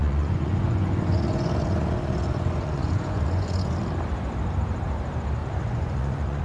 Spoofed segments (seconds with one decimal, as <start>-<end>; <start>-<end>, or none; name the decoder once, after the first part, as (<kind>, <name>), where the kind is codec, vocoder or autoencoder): 0.0-3.8 (vocoder, Vocos); 5.4-6.4